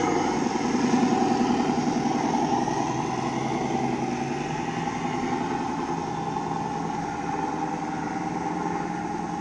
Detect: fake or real real